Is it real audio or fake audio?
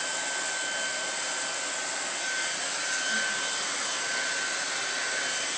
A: real